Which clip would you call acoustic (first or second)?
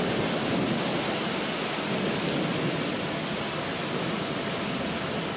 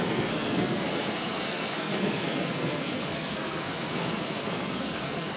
first